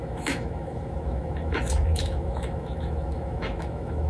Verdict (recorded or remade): remade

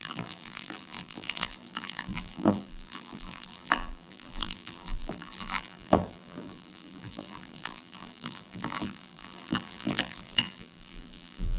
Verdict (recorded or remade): remade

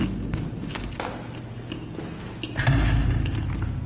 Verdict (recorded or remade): recorded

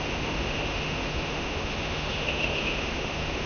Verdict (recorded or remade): remade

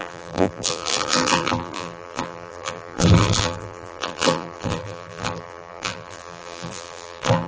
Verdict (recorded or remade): remade